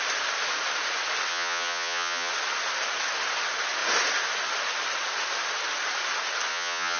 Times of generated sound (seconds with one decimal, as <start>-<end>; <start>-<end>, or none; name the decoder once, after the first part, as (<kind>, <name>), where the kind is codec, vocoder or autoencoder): 1.3-2.3 (vocoder, HiFi-GAN); 6.5-7.0